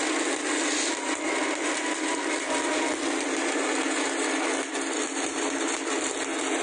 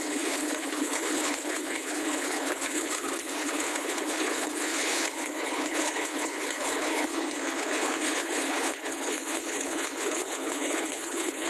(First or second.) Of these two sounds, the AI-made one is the second